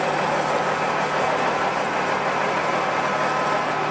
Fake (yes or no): no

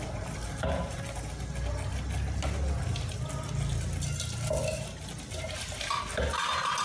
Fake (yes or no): no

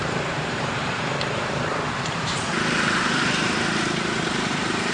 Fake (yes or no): yes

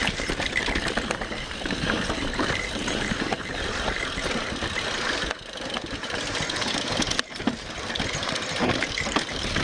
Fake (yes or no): yes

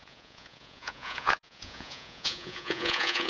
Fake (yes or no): yes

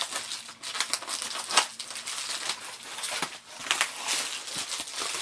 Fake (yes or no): no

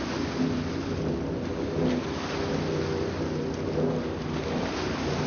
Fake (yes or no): no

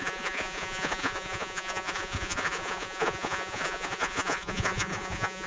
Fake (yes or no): yes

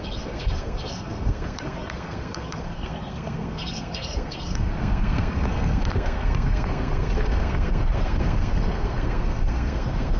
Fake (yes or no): yes